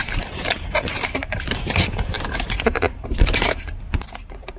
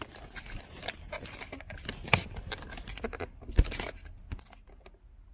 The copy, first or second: first